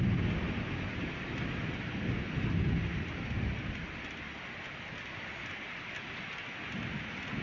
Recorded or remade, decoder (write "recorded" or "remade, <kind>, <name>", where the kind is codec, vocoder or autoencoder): recorded